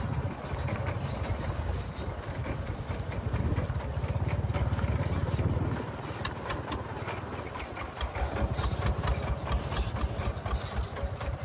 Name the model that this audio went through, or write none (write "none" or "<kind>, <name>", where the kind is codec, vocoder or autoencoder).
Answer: none